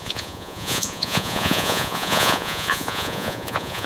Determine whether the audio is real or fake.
fake